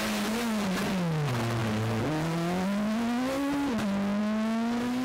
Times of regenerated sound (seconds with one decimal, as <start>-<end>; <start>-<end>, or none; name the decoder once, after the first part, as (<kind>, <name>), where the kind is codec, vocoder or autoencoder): none